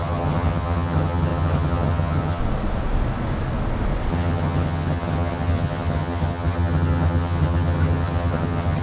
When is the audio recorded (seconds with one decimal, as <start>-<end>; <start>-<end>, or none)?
2.4-4.1